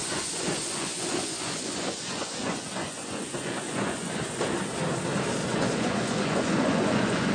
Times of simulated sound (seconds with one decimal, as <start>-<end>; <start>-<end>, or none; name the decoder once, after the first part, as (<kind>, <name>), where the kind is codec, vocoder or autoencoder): 0.0-4.4 (vocoder, Vocos); 5.4-7.3